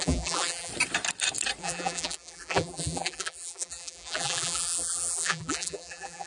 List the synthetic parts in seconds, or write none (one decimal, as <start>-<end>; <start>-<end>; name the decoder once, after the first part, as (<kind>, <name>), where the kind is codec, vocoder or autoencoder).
0.0-0.7 (vocoder, BigVGAN v2); 1.6-6.3